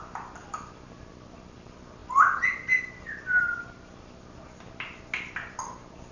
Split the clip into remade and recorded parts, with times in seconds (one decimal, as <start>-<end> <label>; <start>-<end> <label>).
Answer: 0.0-6.1 recorded